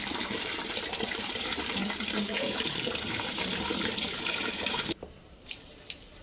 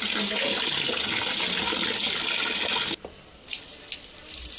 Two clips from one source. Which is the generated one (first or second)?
first